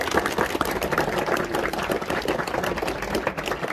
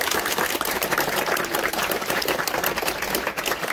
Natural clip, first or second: first